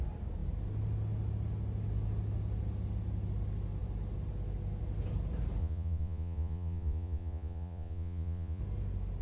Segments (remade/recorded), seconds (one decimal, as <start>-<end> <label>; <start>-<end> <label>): 0.0-5.6 recorded; 5.6-8.6 remade; 8.6-9.2 recorded